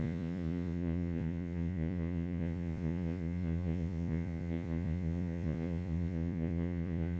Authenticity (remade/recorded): remade